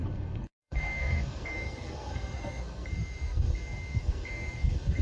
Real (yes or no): no